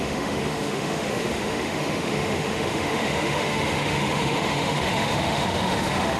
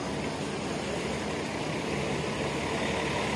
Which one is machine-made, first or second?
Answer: first